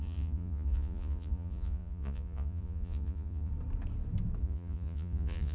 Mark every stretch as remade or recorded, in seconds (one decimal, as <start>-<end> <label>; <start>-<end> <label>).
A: 0.0-3.5 remade; 3.5-4.4 recorded; 4.4-5.5 remade